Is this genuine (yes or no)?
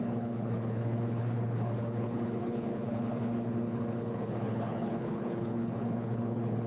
no